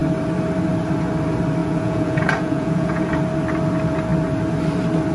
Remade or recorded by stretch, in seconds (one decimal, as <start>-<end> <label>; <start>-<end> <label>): 0.0-1.6 recorded; 1.6-3.1 remade; 3.1-5.1 recorded